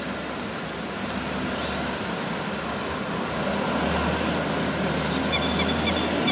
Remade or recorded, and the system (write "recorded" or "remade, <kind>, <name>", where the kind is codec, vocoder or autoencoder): recorded